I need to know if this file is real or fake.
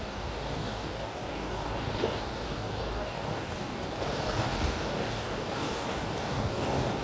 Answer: fake